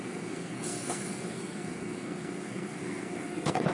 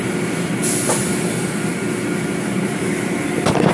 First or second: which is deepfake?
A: first